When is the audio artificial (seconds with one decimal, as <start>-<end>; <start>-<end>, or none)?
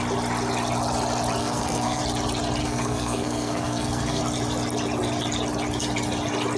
1.4-2.0; 2.6-4.2